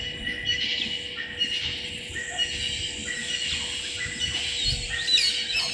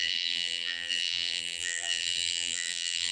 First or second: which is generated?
second